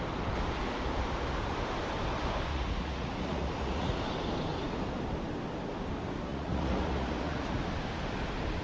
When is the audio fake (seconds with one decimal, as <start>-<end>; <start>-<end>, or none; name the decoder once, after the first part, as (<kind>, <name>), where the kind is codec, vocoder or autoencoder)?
2.5-4.0 (vocoder, Vocos); 6.3-7.6